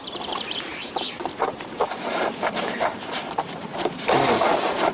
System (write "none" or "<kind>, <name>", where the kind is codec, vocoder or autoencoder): vocoder, BigVGAN v2